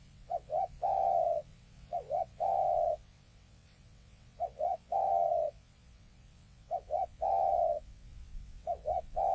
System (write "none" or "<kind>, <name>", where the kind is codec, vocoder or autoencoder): vocoder, WaveNeXt